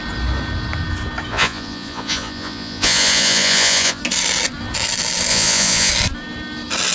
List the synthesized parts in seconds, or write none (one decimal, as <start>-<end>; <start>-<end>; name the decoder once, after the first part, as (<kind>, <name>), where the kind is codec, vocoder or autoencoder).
1.3-4.0 (vocoder, Vocos); 5.3-5.9